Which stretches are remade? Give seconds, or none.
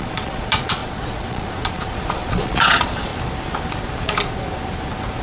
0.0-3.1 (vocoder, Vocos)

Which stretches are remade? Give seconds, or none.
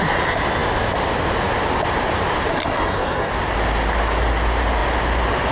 2.5-3.3 (codec, SNAC)